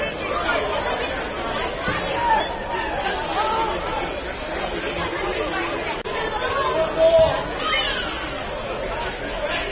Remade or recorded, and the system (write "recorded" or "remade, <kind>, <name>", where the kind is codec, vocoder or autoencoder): recorded